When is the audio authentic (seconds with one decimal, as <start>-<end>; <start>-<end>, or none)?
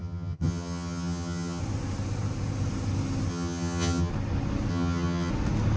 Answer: 1.6-3.3; 4.1-4.7; 5.3-5.8